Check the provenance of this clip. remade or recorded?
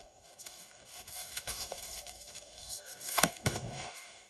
remade